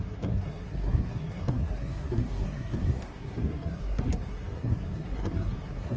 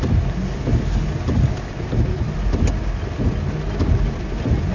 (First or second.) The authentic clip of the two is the second